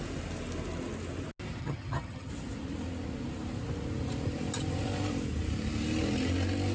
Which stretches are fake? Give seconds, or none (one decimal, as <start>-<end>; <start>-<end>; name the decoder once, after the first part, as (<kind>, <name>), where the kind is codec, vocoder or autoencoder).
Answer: 1.6-2.3 (vocoder, HiFi-GAN)